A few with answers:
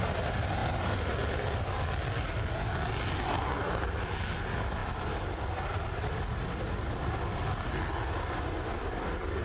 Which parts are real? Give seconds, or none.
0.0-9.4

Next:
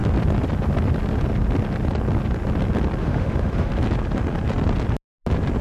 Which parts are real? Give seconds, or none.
0.0-3.0; 3.7-5.6

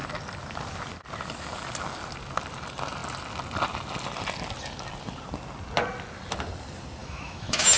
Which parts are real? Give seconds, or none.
0.0-7.0

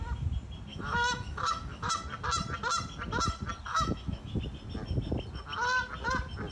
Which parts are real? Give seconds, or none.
0.0-0.7; 1.9-3.7; 4.4-6.5

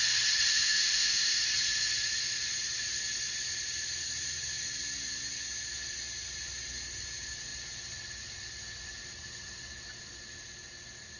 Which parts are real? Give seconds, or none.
0.0-0.5; 1.4-11.2

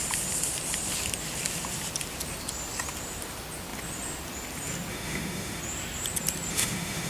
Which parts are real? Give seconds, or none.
0.0-4.9; 5.6-6.5